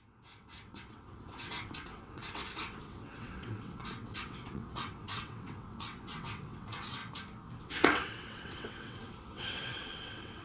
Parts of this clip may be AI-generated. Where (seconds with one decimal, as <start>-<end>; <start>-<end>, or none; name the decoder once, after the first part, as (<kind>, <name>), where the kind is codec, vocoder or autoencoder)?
0.0-7.0 (vocoder, WaveNeXt); 7.6-10.4